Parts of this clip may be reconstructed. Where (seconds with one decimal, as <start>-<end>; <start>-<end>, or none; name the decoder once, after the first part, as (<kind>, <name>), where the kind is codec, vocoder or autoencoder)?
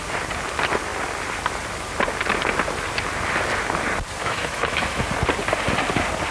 4.2-5.0 (autoencoder, DAC-VAE)